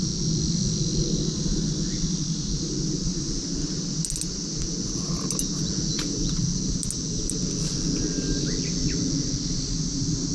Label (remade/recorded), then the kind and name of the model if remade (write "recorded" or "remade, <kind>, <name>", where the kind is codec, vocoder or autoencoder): recorded